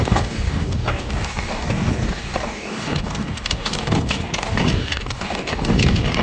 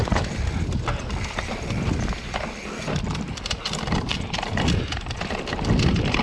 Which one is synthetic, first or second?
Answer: first